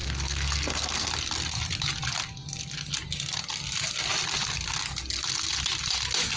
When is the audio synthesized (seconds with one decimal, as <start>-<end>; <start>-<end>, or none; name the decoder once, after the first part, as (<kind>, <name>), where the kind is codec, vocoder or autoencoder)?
0.0-1.1 (codec, SNAC)